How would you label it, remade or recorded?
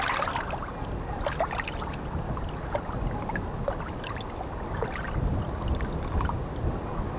recorded